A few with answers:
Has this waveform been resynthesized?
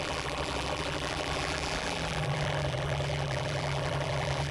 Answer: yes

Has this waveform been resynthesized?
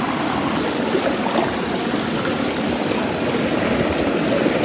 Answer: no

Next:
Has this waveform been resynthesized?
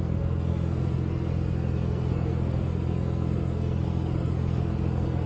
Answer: yes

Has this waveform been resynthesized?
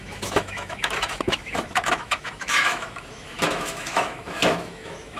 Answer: yes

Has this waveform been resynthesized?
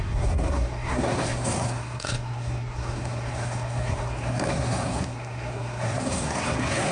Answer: yes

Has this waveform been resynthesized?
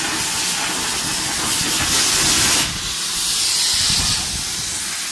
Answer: no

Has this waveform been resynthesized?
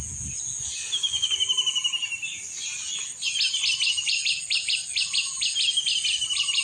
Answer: no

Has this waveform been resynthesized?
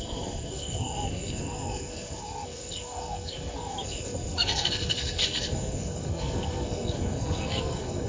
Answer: yes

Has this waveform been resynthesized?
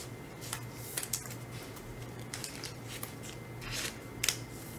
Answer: no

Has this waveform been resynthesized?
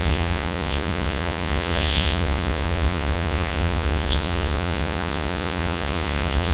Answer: yes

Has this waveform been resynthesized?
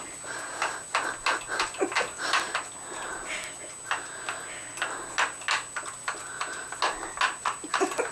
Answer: no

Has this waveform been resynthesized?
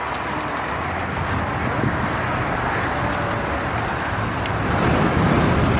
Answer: no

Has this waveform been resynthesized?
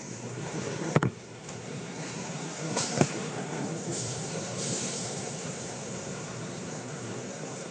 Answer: yes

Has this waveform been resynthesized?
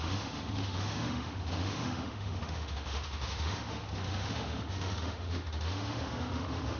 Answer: yes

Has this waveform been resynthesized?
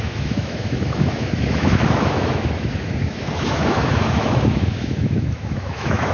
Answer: yes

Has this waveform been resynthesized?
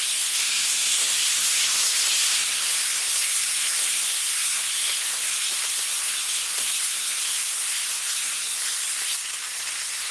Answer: yes